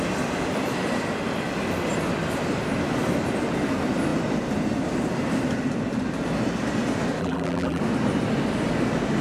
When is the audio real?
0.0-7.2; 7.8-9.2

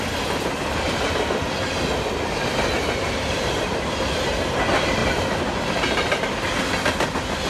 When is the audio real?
0.0-5.0; 6.2-7.5

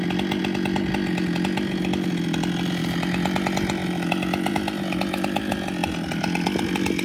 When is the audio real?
0.0-7.0

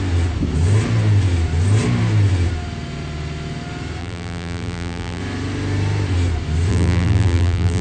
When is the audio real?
0.0-4.0; 5.2-6.7

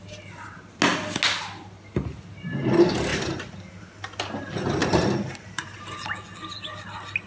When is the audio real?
0.0-3.1; 3.7-4.8; 5.8-7.3